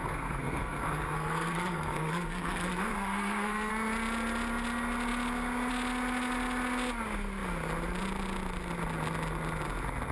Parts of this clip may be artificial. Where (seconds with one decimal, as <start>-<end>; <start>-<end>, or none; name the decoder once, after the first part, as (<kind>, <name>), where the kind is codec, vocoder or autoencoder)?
0.0-3.7 (codec, SNAC)